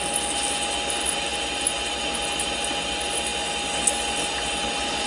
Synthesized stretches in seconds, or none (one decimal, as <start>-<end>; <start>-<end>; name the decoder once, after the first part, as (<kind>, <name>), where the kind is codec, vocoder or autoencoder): none